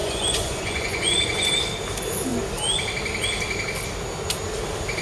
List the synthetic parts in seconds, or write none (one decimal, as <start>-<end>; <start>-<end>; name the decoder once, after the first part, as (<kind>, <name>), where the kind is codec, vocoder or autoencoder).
0.0-1.5 (vocoder, Vocos)